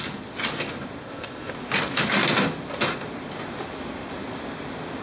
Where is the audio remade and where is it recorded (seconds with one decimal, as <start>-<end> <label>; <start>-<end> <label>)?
0.0-1.0 recorded; 1.0-1.5 remade; 1.5-5.0 recorded